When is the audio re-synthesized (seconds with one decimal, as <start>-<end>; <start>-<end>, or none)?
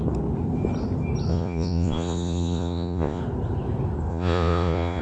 1.3-3.2; 4.1-5.0